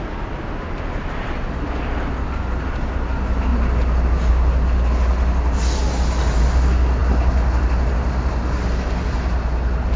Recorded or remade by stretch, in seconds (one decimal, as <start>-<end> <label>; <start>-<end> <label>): 0.0-10.0 recorded